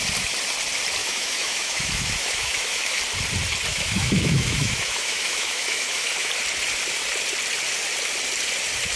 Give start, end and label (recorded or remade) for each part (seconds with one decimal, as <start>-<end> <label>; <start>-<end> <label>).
0.0-1.0 recorded; 1.0-3.0 remade; 3.0-3.7 recorded; 3.7-6.3 remade; 6.3-9.0 recorded